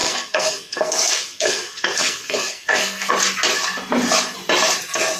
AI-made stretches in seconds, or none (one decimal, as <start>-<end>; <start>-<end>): 0.0-3.1